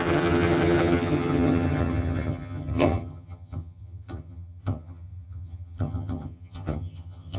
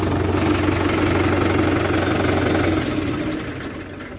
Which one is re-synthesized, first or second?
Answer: first